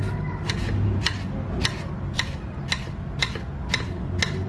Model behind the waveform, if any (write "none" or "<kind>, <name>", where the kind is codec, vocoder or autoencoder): none